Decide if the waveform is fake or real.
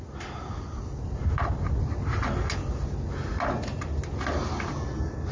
real